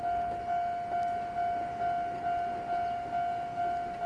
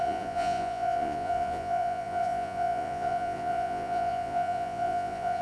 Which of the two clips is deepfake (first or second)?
second